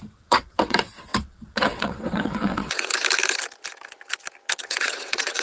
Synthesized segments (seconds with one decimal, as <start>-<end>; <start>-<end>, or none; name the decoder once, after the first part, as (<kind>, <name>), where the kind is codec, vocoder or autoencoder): 0.0-2.9 (vocoder, WaveNeXt); 4.6-5.4